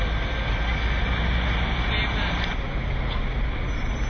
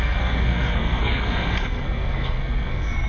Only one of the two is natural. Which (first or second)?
first